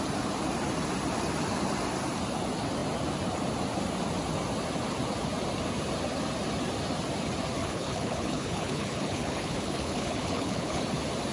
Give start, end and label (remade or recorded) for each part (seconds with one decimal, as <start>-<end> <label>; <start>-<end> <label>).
0.0-7.6 recorded; 7.6-10.8 remade; 10.8-11.3 recorded